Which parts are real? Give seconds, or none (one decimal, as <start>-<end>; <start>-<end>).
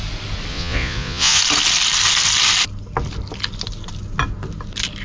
0.0-0.5; 1.4-5.0